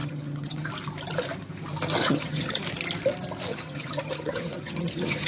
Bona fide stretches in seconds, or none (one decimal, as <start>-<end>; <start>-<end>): 0.7-2.0; 2.5-3.5